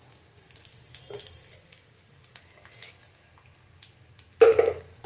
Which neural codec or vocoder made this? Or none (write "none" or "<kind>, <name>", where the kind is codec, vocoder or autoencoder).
none